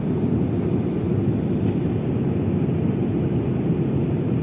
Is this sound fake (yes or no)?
no